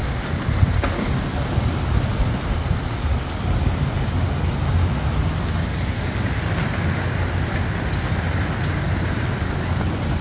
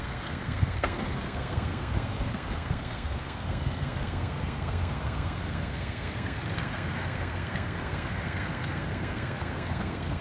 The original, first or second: first